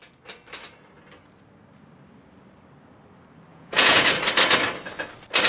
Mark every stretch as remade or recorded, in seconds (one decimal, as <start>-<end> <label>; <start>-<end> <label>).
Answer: 0.0-3.5 recorded; 3.5-4.1 remade; 4.1-5.5 recorded